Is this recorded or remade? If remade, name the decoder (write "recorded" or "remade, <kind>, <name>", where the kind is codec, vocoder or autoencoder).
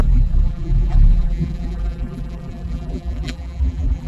remade, vocoder, BigVGAN v2